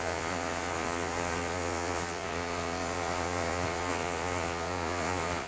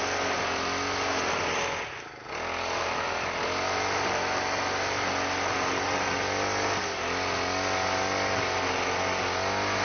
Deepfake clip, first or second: first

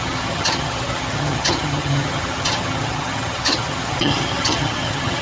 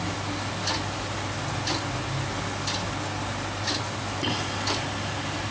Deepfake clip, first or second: first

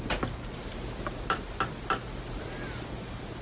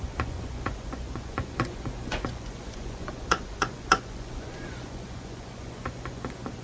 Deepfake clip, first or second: second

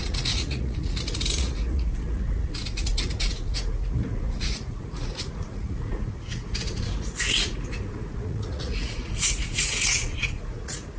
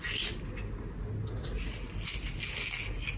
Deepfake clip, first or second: first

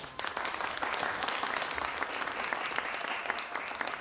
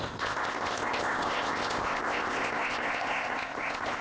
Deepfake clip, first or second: second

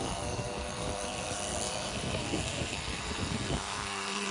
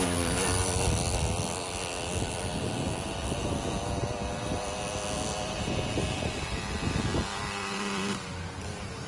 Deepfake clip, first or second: first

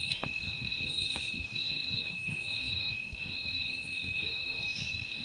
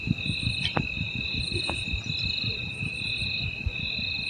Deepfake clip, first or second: first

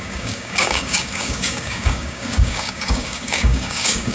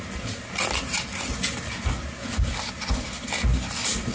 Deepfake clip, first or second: first